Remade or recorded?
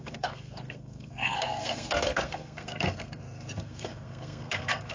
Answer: remade